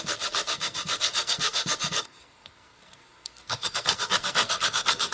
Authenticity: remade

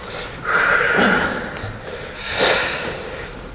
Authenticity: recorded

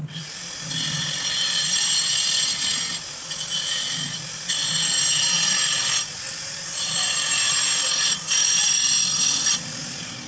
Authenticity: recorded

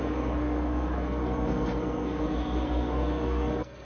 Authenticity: remade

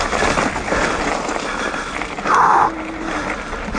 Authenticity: recorded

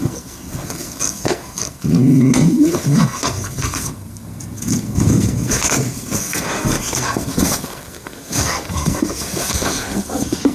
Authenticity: remade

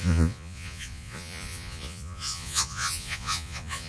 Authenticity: remade